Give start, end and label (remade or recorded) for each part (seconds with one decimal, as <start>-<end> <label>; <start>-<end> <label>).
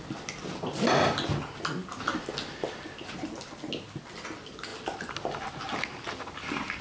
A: 0.0-6.8 recorded